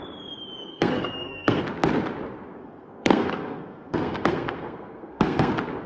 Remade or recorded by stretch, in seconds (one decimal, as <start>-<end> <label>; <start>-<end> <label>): 0.0-0.7 recorded; 0.7-1.6 remade; 1.6-2.6 recorded; 2.6-5.5 remade; 5.5-5.9 recorded